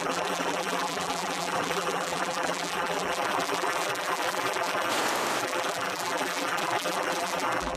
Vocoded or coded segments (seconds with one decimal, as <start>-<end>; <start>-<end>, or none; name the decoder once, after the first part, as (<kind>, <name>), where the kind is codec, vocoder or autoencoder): 0.0-4.9 (vocoder, BigVGAN v2); 5.4-7.8